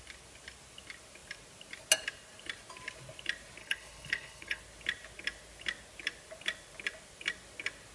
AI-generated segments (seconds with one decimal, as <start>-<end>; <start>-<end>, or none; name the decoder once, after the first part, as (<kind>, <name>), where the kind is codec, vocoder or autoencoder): 3.6-4.6 (codec, HILCodec)